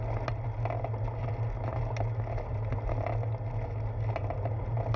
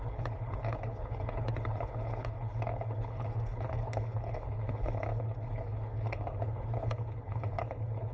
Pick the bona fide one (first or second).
first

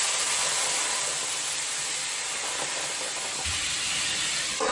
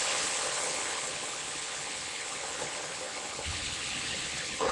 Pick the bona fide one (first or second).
first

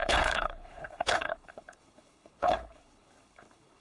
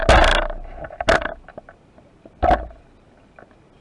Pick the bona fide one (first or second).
second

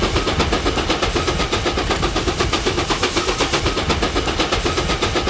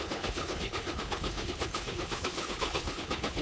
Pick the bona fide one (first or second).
first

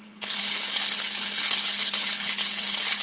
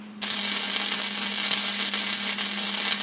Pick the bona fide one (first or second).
second